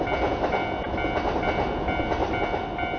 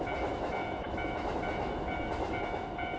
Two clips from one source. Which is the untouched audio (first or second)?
first